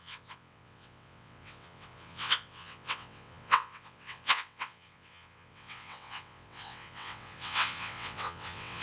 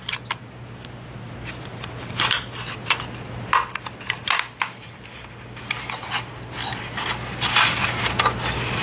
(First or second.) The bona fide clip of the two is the second